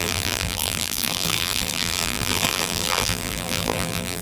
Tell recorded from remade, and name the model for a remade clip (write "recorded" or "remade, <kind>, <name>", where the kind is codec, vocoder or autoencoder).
remade, vocoder, BigVGAN v2